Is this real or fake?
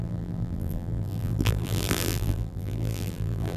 fake